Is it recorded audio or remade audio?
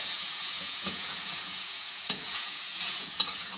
remade